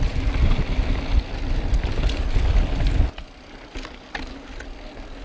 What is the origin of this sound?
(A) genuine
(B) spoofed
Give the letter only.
A